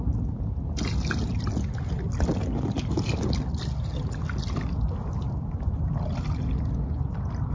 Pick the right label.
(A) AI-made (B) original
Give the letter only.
B